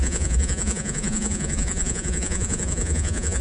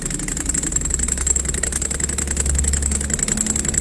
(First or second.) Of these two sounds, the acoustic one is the second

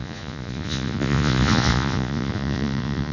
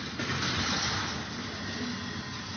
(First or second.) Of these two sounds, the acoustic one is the second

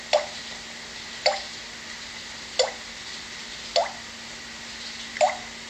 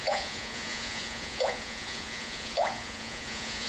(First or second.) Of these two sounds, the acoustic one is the first